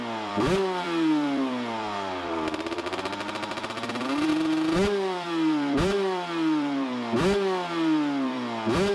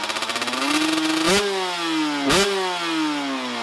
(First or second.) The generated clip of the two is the first